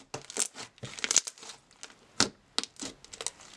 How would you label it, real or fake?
real